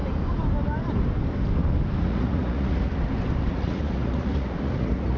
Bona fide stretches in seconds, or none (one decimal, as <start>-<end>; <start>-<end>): 0.0-2.0; 2.9-3.5